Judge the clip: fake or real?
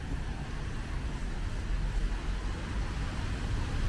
real